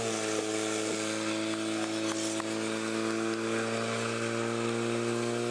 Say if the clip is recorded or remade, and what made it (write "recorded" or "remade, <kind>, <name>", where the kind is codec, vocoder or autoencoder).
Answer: recorded